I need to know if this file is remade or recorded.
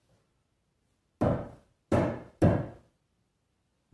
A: recorded